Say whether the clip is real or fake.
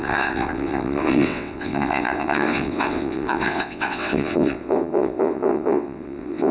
fake